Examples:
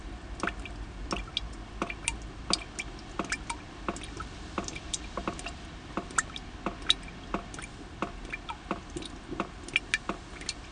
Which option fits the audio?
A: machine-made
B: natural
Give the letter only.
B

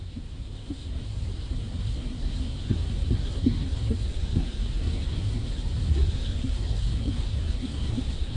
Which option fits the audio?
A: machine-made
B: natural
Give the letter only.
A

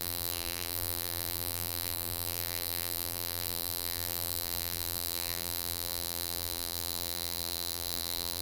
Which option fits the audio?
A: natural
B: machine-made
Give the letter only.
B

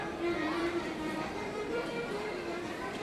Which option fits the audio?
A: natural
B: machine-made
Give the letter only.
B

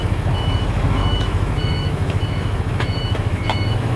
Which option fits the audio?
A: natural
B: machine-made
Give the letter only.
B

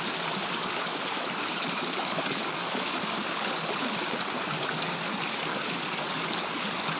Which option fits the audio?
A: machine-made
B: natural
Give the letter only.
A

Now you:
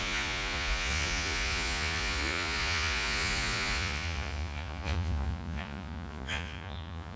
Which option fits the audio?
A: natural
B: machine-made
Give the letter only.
B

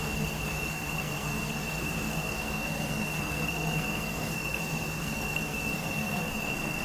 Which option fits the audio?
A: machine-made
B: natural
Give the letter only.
A